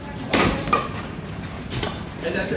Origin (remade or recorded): remade